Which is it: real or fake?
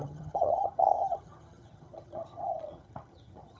fake